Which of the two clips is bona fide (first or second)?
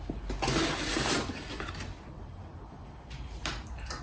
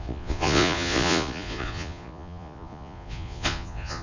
first